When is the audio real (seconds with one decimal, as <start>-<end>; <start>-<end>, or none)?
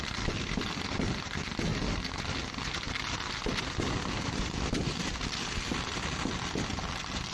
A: 1.7-4.1; 5.7-6.4